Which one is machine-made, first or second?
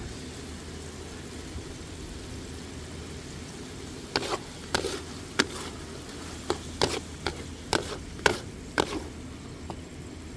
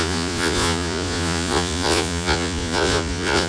second